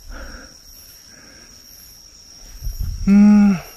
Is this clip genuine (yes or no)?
yes